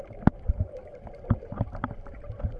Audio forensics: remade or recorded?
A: recorded